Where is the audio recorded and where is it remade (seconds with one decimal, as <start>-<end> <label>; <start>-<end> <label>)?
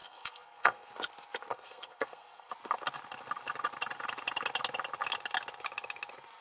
0.0-0.9 remade; 0.9-1.5 recorded; 1.5-2.5 remade; 2.5-6.4 recorded